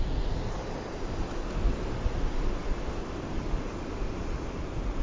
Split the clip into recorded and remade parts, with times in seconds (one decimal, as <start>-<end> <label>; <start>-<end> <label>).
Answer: 0.0-5.0 recorded